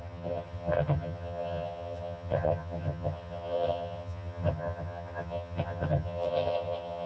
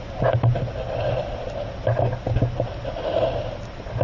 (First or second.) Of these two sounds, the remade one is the first